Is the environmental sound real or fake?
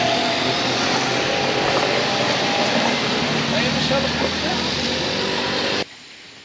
real